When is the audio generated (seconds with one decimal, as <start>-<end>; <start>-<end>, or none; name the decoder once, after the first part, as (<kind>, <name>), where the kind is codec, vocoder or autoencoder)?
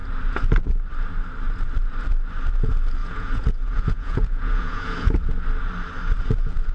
3.0-5.2 (vocoder, Vocos)